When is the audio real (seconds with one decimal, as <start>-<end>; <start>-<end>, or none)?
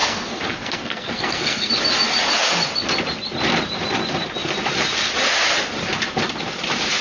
1.7-7.0